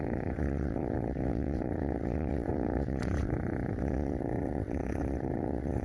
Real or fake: fake